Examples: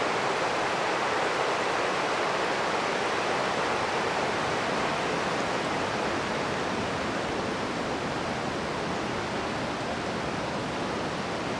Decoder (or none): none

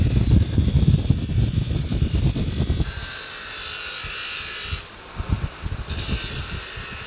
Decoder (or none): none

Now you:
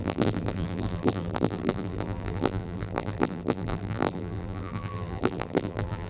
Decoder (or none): vocoder, BigVGAN v2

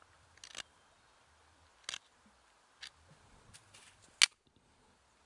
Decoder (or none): none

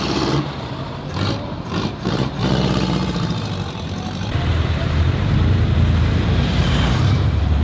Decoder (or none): vocoder, BigVGAN v2